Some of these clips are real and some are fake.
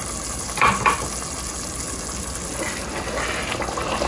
real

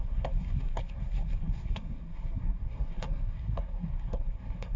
fake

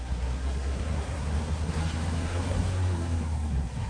fake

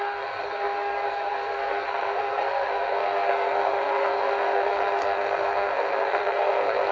fake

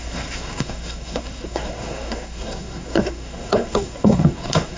fake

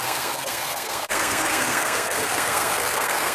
fake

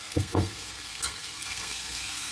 fake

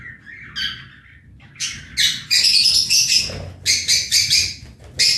real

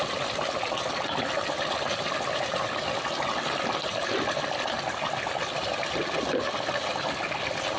real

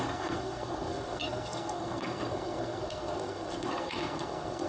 fake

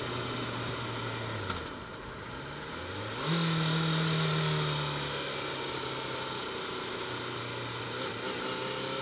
real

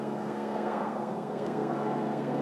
fake